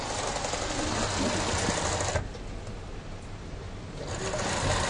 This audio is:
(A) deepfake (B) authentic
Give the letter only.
B